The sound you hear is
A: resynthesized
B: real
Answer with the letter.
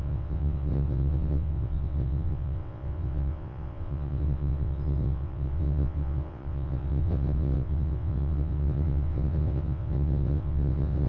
A